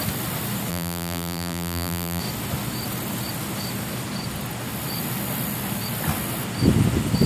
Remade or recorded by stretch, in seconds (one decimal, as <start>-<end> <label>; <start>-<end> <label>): 0.0-0.7 recorded; 0.7-2.2 remade; 2.2-7.3 recorded